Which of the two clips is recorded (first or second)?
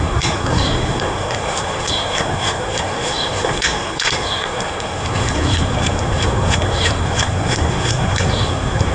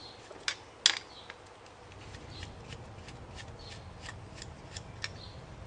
second